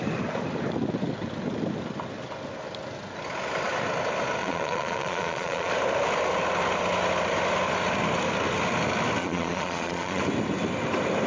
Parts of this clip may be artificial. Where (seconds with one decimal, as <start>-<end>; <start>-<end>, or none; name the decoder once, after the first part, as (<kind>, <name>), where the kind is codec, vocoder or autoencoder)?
4.4-5.7 (vocoder, Vocos); 9.2-10.2